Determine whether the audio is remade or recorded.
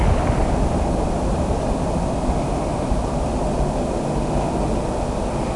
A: recorded